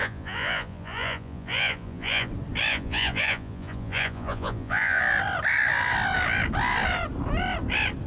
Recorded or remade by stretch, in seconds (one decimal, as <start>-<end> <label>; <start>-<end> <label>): 0.0-2.3 remade; 2.3-2.7 recorded; 2.7-5.0 remade; 5.0-8.1 recorded